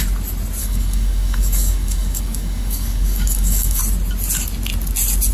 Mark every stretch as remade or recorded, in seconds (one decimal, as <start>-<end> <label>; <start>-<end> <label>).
0.0-0.6 recorded; 0.6-3.8 remade; 3.8-5.3 recorded

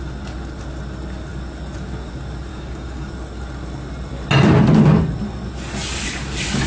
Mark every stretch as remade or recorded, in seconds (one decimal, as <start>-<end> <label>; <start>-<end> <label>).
0.0-2.5 recorded; 2.5-3.1 remade; 3.1-6.7 recorded